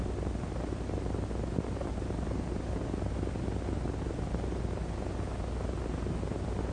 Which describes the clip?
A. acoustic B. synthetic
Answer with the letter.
A